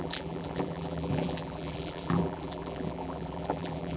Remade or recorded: remade